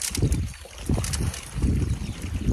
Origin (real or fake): real